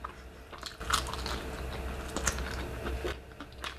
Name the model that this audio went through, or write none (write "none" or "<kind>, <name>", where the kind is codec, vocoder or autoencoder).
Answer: none